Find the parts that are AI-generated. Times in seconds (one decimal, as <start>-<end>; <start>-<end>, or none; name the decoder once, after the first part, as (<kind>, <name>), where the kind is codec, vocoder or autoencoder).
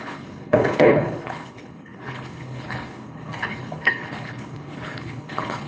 0.0-5.7 (codec, HILCodec)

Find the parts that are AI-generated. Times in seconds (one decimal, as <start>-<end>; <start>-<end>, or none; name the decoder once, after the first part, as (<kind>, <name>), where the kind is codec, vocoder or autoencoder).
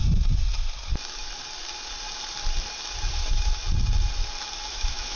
3.1-3.6 (autoencoder, DAC-VAE); 4.7-5.2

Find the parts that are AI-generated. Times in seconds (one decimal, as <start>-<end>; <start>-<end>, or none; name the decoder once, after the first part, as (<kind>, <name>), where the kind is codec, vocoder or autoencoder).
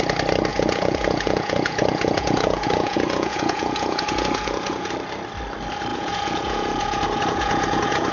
0.5-4.9 (vocoder, Vocos); 5.9-8.1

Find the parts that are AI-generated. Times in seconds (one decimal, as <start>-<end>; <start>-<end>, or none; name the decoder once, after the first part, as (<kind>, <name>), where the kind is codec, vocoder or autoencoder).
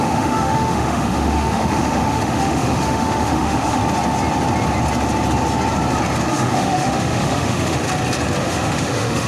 0.0-3.8 (autoencoder, DAC-VAE); 6.3-7.8; 8.4-9.3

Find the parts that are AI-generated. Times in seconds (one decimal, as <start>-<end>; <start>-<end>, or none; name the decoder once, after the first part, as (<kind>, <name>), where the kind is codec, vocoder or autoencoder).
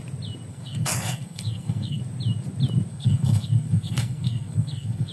0.5-2.0 (codec, SNAC); 2.9-5.1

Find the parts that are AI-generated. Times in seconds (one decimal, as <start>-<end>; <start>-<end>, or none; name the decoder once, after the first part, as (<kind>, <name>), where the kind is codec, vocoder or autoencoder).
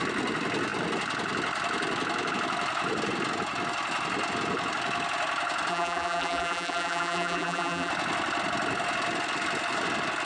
5.7-7.9 (vocoder, BigVGAN v2)